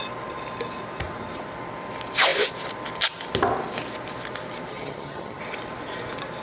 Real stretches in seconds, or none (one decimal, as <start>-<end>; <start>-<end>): 0.0-4.7; 5.4-6.4